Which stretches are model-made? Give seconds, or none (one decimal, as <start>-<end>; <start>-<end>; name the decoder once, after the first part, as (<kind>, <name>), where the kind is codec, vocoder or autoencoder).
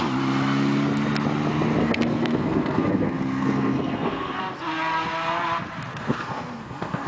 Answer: 1.8-4.4 (codec, SNAC); 5.9-7.1